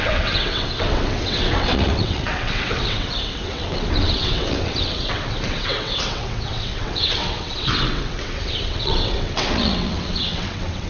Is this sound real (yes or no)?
no